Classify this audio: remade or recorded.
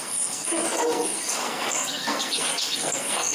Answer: remade